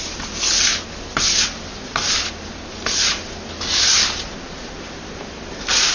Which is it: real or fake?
real